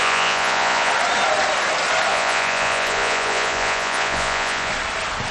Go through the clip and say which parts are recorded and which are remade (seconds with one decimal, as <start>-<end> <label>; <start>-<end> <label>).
0.0-0.9 remade; 0.9-2.1 recorded; 2.1-4.7 remade; 4.7-5.3 recorded